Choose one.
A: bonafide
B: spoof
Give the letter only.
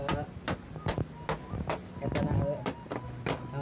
A